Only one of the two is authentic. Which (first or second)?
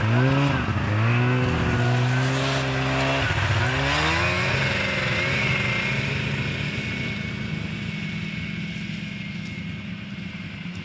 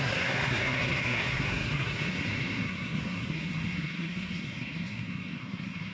first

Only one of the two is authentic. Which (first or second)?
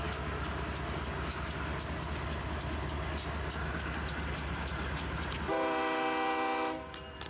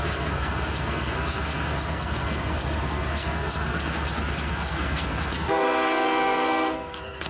first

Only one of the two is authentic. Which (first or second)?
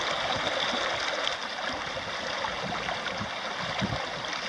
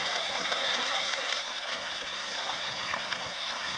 first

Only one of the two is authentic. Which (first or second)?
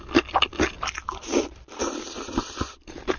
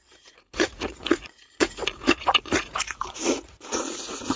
first